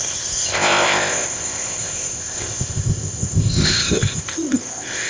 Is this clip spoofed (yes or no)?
yes